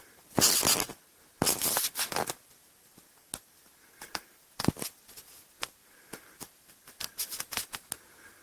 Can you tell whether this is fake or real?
real